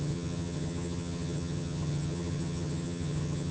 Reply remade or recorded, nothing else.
remade